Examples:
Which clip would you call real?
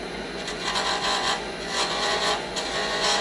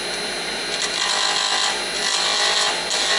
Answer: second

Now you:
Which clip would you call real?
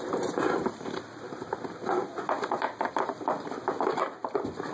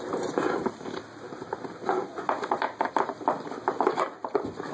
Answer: second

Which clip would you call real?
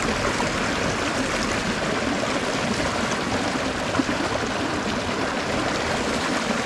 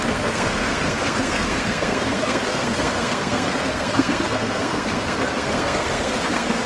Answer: first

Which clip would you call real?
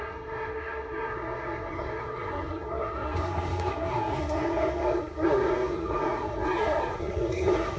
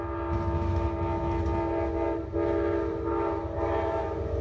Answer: second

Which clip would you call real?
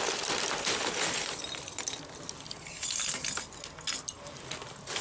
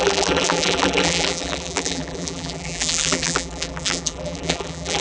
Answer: first